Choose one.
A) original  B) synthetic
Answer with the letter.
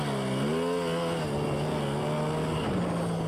A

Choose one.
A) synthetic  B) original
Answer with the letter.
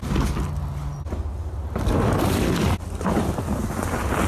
B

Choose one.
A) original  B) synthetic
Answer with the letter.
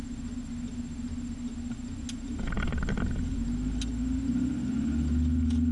A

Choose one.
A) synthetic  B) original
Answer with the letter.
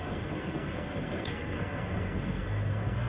A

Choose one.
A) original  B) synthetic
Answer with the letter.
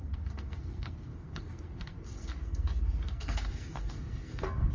B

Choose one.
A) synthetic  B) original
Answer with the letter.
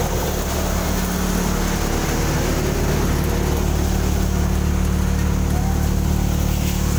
B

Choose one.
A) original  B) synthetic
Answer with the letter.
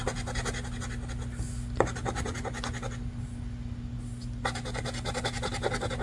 A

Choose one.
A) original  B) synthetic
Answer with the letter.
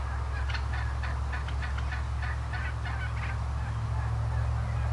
A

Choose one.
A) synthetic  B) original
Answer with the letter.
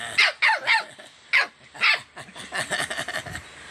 B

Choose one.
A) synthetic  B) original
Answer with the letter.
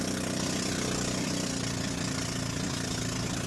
B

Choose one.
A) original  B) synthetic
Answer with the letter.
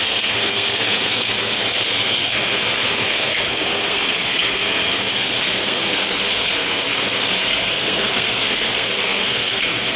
B